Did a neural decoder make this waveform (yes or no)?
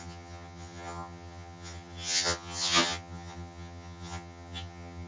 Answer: yes